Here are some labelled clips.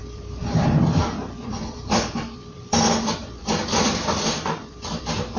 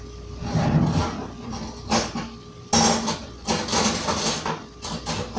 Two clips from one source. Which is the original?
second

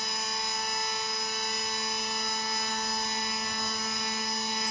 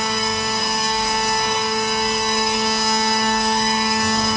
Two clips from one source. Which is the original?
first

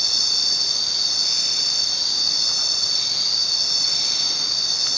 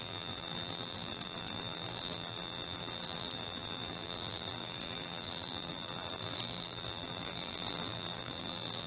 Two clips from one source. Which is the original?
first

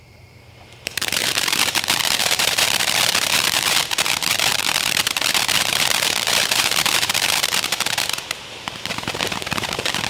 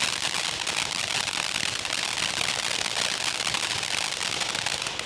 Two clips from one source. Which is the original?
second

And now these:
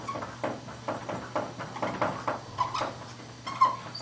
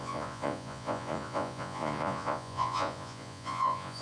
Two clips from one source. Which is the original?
first